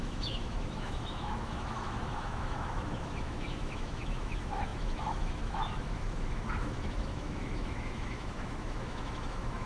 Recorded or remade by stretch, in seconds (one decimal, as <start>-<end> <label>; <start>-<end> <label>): 0.0-9.7 remade

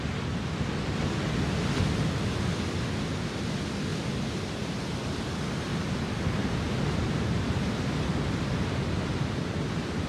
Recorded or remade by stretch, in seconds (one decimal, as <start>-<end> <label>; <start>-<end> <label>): 0.0-10.1 recorded

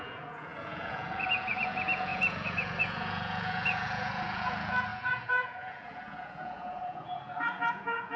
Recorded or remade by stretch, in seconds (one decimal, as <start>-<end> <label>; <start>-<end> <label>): 0.0-8.2 remade

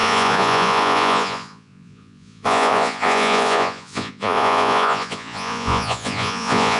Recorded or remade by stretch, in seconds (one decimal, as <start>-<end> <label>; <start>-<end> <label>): 0.0-6.8 remade

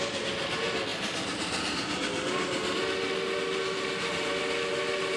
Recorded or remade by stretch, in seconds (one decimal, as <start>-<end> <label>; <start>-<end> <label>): 0.0-5.2 recorded

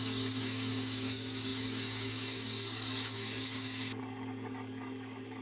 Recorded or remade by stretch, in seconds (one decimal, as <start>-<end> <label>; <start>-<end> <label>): 0.0-5.4 remade

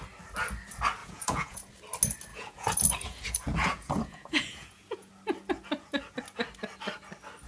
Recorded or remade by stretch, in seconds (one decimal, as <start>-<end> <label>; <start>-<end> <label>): 0.0-1.0 recorded; 1.0-1.7 remade; 1.7-2.3 recorded; 2.3-5.1 remade; 5.1-7.5 recorded